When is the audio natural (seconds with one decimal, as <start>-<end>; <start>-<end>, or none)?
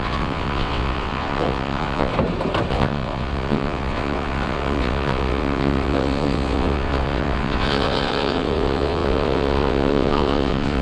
2.1-2.7